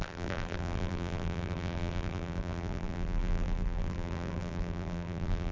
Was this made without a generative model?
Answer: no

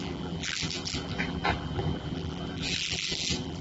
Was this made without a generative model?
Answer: no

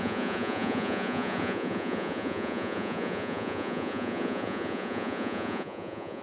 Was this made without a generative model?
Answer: no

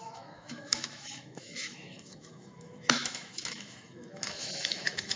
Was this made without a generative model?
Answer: no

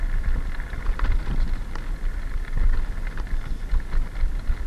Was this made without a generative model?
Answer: yes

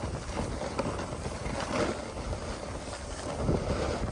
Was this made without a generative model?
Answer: yes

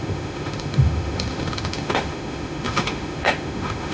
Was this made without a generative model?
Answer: no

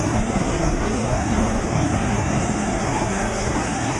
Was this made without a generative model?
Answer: no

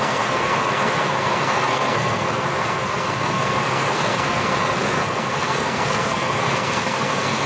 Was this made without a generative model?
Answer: no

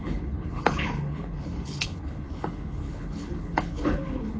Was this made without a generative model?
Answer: no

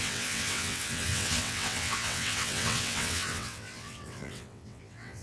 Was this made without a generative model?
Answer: no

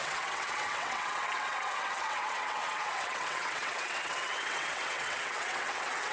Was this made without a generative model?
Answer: no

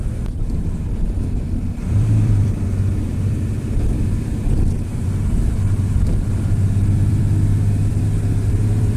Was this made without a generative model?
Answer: no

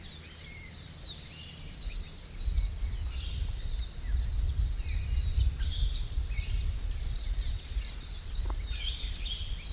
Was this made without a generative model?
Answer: yes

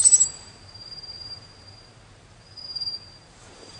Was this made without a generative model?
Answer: no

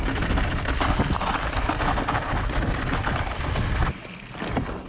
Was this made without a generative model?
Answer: yes